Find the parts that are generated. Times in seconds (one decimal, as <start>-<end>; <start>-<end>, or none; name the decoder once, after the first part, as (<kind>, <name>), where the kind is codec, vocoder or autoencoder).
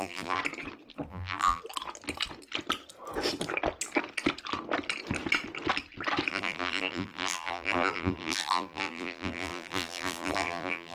0.0-0.4 (vocoder, BigVGAN v2); 1.1-1.6; 6.3-10.9